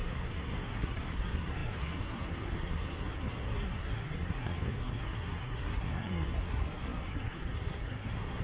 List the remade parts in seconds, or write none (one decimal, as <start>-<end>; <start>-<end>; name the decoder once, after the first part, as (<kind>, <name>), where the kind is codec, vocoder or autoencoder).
0.0-8.4 (codec, SNAC)